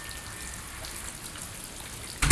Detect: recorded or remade recorded